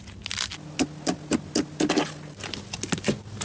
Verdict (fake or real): real